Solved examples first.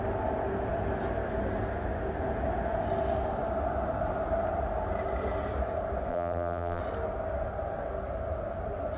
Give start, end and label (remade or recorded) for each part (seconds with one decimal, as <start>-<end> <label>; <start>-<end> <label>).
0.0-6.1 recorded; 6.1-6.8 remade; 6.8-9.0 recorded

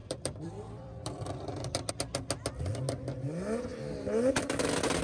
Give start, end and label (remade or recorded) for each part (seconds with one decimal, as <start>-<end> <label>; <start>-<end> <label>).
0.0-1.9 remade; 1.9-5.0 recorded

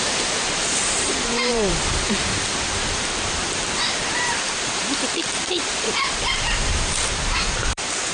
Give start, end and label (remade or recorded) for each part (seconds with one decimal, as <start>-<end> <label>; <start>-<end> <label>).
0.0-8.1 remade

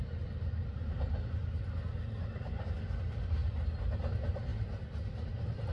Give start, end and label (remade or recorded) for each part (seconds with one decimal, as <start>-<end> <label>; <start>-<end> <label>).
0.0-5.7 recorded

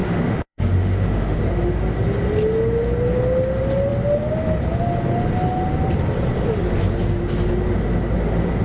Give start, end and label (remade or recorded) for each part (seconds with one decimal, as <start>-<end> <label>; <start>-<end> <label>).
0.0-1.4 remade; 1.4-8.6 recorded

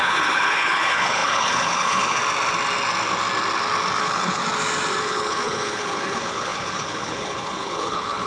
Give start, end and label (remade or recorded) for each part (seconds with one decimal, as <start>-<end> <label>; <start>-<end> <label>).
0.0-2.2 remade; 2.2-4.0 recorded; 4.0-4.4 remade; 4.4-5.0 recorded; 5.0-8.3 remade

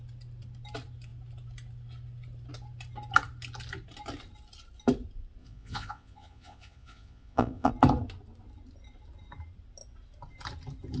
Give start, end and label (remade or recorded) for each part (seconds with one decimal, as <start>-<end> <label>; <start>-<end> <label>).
0.0-5.4 recorded; 5.4-7.7 remade; 7.7-11.0 recorded

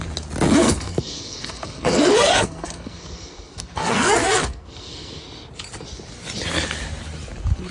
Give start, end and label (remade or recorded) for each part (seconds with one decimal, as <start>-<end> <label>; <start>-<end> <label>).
0.0-0.6 recorded; 0.6-5.2 remade; 5.2-7.7 recorded